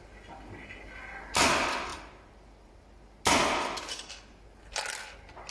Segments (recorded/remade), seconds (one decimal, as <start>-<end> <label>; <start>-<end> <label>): 0.0-5.5 recorded